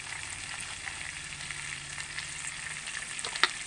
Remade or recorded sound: recorded